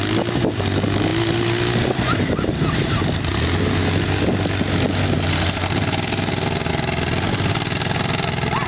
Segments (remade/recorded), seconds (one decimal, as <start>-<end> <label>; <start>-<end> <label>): 0.0-8.7 recorded